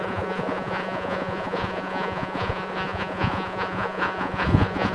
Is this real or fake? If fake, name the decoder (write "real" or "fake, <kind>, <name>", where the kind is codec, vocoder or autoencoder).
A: fake, vocoder, Vocos